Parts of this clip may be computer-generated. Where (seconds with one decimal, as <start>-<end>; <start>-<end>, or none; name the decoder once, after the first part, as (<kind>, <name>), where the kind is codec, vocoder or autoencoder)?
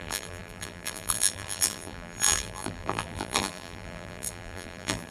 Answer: 0.0-5.1 (vocoder, BigVGAN v2)